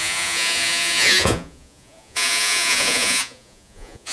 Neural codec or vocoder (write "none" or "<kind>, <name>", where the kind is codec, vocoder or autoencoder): vocoder, Vocos